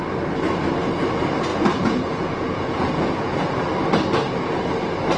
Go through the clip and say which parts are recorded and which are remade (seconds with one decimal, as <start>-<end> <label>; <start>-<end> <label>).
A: 0.0-1.5 recorded; 1.5-3.6 remade; 3.6-5.2 recorded